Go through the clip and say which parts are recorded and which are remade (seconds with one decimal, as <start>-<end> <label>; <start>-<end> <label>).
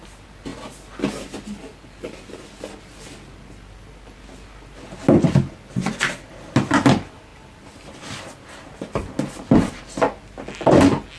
0.0-11.2 recorded